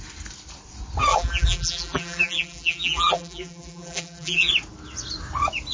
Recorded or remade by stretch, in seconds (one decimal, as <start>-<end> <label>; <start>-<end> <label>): 0.0-1.1 recorded; 1.1-4.5 remade; 4.5-5.7 recorded